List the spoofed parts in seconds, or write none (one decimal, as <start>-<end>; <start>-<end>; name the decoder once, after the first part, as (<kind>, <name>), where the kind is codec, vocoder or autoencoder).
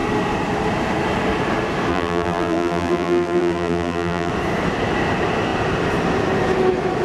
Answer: 1.9-4.3 (vocoder, BigVGAN v2)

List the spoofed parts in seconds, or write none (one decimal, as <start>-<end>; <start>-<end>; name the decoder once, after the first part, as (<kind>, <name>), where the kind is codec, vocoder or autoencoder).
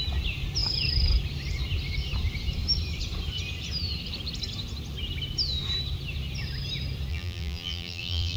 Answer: 7.1-8.4 (vocoder, BigVGAN v2)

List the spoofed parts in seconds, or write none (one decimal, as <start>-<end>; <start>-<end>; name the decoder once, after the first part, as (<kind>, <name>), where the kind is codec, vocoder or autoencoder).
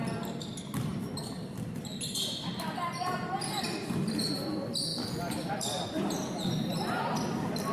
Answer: none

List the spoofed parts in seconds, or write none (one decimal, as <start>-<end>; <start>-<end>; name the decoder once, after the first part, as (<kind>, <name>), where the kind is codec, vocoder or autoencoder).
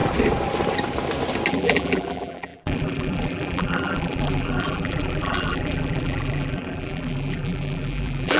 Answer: 1.5-8.4 (vocoder, BigVGAN v2)